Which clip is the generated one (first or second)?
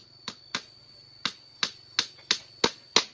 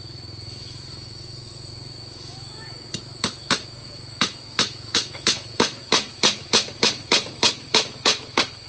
second